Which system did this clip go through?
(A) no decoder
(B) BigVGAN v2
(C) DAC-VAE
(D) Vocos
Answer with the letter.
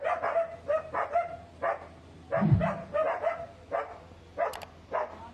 A